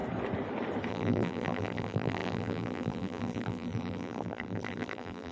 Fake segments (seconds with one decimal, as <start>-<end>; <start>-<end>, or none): 0.9-5.3